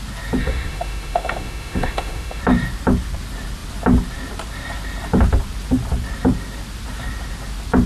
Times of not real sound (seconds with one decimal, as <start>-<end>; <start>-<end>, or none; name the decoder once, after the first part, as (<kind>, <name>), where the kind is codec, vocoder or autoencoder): 0.4-2.4 (autoencoder, DAC-VAE)